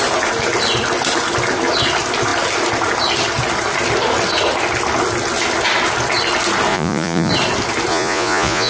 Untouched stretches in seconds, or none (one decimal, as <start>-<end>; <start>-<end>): 0.0-6.7; 7.3-7.9